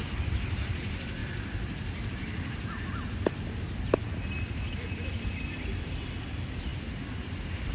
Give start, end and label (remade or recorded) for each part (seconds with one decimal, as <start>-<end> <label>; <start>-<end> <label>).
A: 0.0-7.7 recorded